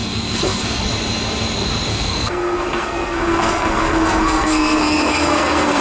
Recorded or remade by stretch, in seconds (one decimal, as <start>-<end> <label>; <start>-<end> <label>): 0.0-0.8 remade; 0.8-1.9 recorded; 1.9-5.8 remade